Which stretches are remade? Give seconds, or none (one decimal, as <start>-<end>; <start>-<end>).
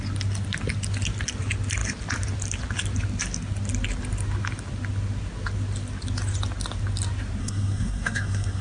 7.4-8.6